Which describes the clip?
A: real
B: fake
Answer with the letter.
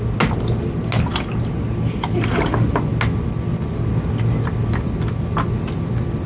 A